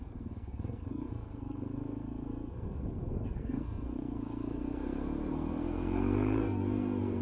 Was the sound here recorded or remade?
remade